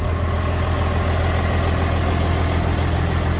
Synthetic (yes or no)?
no